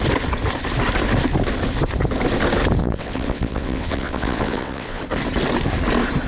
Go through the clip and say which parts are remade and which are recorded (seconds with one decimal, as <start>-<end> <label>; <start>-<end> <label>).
0.0-2.8 recorded; 2.8-5.0 remade; 5.0-6.3 recorded